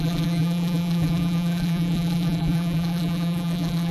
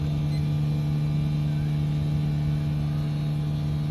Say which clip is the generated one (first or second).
first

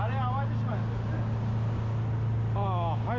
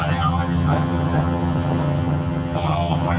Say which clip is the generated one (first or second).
second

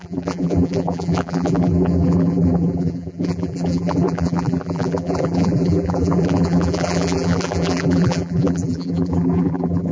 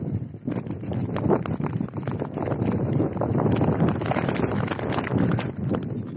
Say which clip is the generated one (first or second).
first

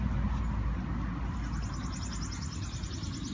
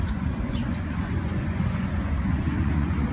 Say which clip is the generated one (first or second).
second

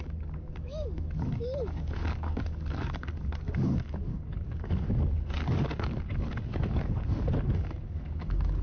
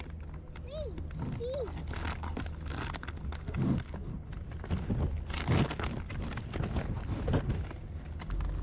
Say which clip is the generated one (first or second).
first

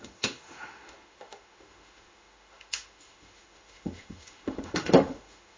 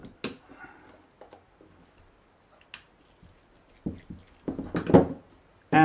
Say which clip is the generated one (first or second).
first